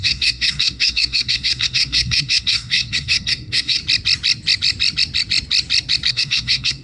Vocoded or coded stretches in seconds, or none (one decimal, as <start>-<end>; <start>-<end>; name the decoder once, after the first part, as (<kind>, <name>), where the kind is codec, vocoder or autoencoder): 0.0-3.8 (codec, SNAC); 6.1-6.8

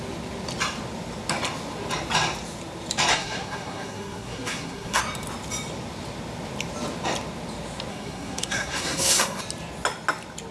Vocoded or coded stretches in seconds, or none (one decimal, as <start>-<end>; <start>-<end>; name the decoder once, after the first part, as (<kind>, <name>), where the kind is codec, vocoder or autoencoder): 3.1-5.0 (codec, SNAC); 7.9-9.4

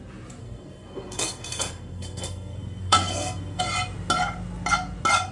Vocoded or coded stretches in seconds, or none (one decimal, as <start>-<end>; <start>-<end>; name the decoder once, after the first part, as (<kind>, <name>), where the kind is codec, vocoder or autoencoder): 0.4-3.6 (codec, SNAC)

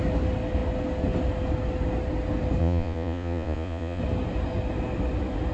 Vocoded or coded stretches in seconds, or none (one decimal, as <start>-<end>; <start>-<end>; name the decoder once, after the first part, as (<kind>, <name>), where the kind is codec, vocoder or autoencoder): 2.6-4.0 (vocoder, Vocos)

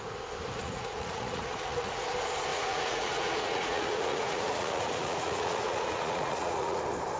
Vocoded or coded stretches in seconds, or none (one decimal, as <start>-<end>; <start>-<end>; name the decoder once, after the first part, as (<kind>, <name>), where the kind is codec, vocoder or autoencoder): 0.6-2.0 (vocoder, Vocos); 2.5-6.8

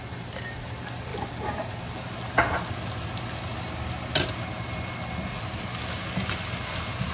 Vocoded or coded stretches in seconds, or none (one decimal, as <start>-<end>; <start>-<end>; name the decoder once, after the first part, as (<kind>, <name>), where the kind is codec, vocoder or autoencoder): none